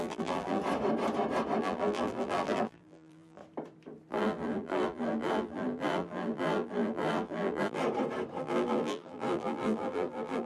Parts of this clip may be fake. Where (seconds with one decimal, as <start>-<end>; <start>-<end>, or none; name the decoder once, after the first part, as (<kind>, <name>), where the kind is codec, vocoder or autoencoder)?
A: 0.0-0.6 (vocoder, BigVGAN v2); 1.6-3.4; 4.1-7.8; 8.4-10.5